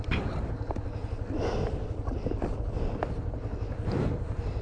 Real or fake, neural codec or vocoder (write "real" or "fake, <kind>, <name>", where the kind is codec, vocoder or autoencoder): real